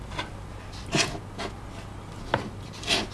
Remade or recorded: recorded